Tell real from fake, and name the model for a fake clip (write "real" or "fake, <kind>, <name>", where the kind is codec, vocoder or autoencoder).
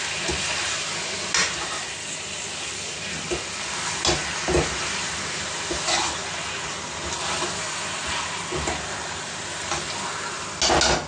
real